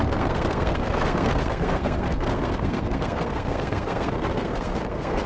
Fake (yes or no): yes